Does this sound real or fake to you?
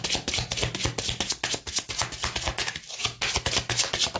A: real